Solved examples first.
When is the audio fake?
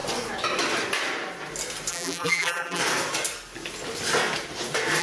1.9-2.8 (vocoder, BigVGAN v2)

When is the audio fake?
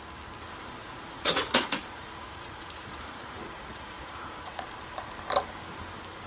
0.8-4.6 (vocoder, Vocos)